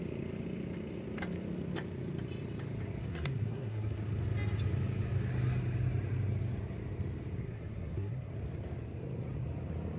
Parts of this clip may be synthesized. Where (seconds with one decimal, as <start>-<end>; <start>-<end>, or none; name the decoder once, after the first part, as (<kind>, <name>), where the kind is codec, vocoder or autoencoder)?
3.1-4.0 (codec, SNAC); 7.4-8.3